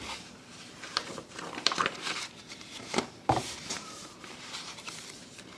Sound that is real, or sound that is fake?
fake